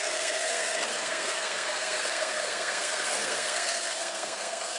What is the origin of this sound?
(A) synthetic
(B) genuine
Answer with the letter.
A